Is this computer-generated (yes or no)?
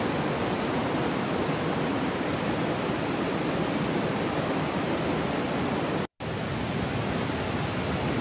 no